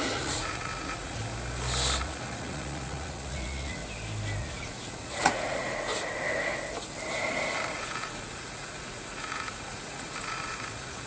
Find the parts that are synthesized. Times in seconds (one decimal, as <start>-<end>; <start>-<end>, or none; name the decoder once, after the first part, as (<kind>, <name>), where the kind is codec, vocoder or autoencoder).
0.0-1.2 (vocoder, Vocos); 2.0-3.8; 4.4-5.9; 7.7-11.1